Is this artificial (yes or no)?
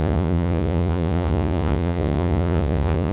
yes